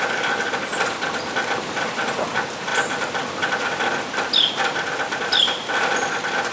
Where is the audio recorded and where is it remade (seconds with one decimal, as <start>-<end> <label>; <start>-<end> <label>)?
0.0-0.7 remade; 0.7-1.5 recorded; 1.5-6.5 remade